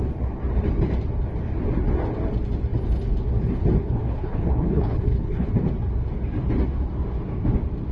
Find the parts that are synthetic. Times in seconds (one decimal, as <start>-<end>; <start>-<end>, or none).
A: 3.8-5.5